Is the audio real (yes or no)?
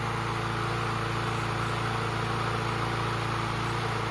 yes